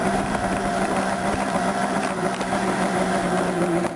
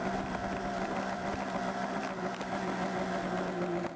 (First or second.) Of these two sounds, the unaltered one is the second